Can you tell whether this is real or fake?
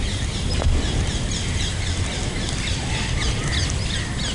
real